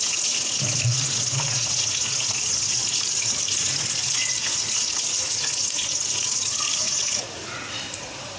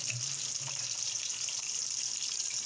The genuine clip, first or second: second